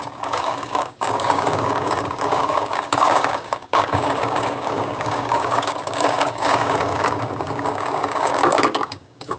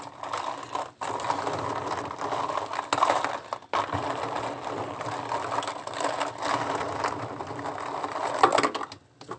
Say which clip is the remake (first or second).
first